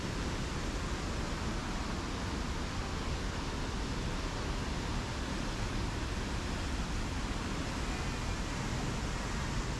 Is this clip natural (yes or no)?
yes